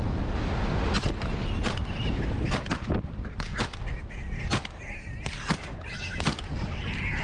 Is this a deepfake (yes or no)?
no